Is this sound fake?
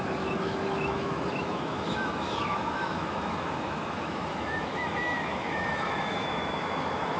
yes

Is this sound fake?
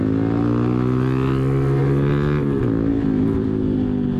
no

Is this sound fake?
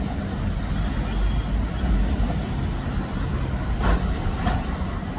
no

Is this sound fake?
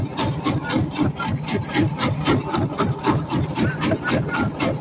no